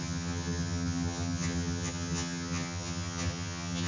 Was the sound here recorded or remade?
remade